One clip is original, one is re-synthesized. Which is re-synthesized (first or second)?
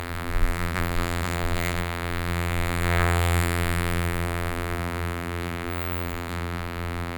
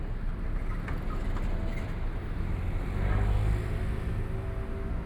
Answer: first